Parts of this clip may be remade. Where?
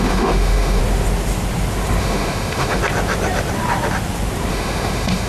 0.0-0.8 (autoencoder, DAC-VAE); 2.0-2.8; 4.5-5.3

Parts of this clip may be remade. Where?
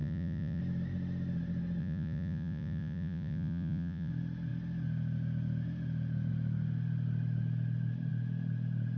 0.0-0.6 (vocoder, Vocos); 1.8-4.1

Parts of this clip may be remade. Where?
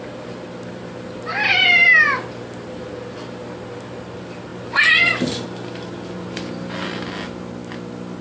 none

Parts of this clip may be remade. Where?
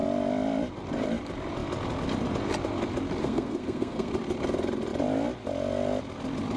3.2-4.1 (codec, SNAC)